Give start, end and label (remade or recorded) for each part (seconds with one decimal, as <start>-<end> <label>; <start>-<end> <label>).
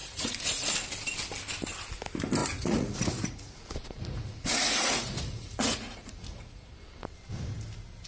0.0-0.7 remade; 0.7-2.4 recorded; 2.4-6.7 remade; 6.7-8.1 recorded